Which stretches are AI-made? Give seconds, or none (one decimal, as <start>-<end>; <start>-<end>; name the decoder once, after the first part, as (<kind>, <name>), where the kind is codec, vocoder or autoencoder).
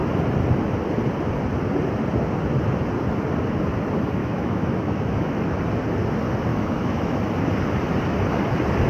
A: 4.2-5.6 (autoencoder, DAC-VAE); 6.5-7.2